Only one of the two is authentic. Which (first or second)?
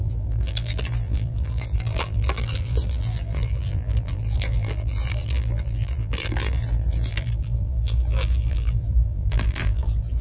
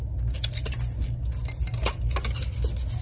second